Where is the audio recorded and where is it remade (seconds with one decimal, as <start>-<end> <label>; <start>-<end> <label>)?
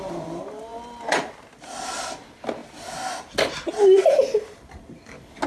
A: 0.0-5.5 recorded